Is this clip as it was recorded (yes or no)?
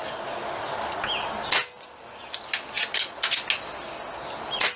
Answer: yes